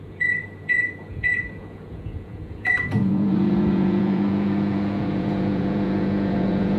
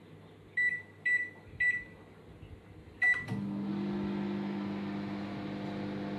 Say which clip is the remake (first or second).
first